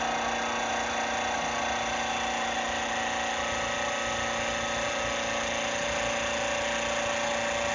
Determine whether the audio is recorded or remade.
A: recorded